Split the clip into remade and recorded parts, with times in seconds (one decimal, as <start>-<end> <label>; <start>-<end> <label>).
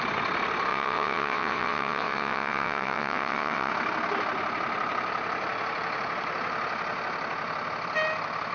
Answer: 0.0-0.7 recorded; 0.7-3.7 remade; 3.7-8.5 recorded